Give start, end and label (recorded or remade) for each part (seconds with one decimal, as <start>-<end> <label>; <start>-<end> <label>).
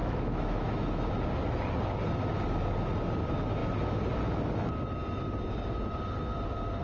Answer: 0.0-1.1 remade; 1.1-6.8 recorded